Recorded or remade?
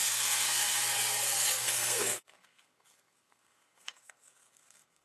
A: remade